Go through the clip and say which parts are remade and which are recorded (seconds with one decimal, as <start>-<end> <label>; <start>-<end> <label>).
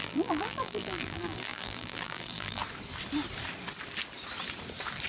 0.0-2.6 remade; 2.6-5.1 recorded